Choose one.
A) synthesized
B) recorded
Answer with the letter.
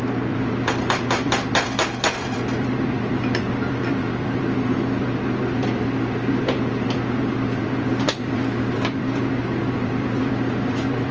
A